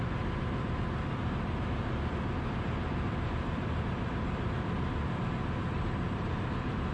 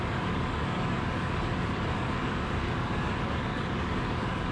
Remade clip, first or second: second